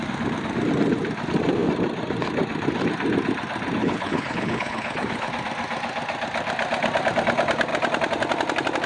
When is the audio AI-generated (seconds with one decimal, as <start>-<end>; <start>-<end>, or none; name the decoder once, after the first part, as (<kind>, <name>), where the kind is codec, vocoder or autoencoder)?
3.8-5.3 (codec, HILCodec)